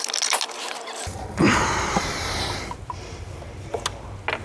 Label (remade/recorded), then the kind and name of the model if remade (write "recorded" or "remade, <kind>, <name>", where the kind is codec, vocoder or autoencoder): recorded